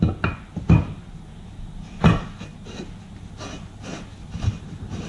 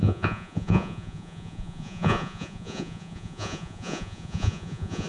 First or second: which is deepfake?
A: second